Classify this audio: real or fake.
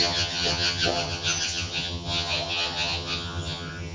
fake